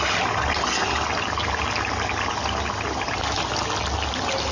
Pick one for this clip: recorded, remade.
recorded